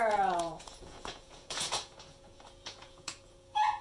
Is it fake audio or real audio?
fake